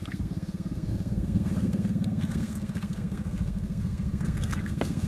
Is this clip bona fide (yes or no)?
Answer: no